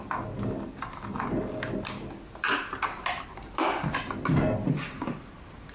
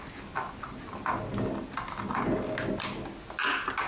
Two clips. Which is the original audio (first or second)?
second